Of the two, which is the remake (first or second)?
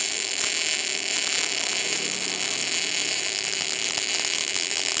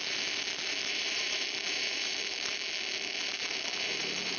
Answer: second